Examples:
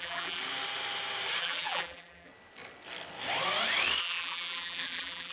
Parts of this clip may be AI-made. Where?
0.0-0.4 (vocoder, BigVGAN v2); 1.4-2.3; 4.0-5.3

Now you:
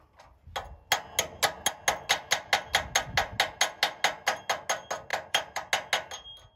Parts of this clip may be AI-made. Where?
5.1-5.7 (vocoder, BigVGAN v2)